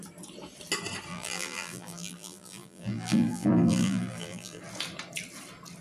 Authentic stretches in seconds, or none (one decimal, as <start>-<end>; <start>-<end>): 0.0-1.1; 4.6-5.8